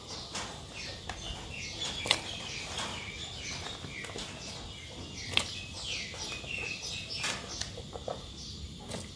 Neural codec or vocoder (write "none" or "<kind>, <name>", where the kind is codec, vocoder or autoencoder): none